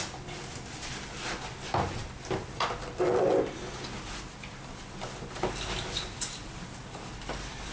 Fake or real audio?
real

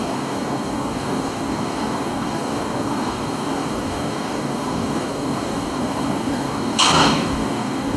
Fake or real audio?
fake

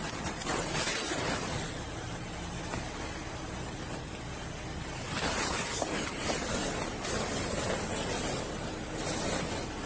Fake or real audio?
real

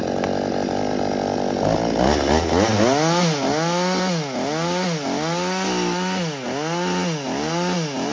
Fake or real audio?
real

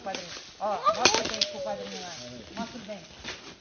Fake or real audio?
real